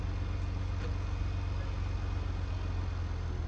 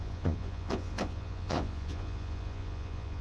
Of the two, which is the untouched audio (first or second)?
first